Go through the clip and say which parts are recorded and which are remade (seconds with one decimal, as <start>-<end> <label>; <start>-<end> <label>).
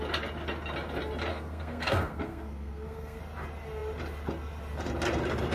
0.0-1.3 recorded; 1.3-3.2 remade; 3.2-5.5 recorded